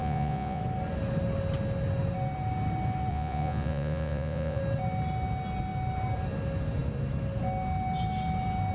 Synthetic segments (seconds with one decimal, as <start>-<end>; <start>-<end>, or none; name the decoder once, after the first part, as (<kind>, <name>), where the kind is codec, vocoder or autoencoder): 0.0-0.6 (vocoder, Vocos); 3.1-4.6

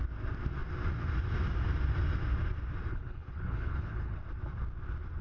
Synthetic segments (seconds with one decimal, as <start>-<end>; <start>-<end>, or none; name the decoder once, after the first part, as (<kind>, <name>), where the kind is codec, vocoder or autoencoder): 2.9-4.2 (codec, HILCodec)